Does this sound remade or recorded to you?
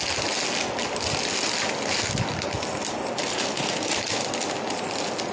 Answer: recorded